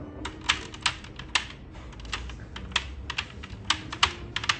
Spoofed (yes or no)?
no